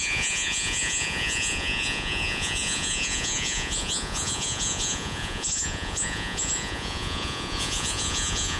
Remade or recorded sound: remade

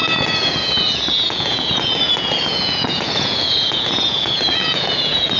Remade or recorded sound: remade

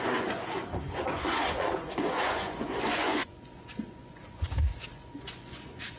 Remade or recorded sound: remade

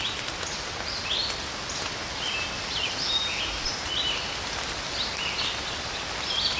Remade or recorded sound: recorded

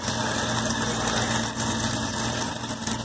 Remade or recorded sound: recorded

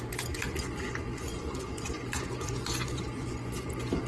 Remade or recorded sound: remade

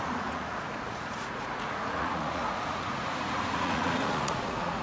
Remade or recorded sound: remade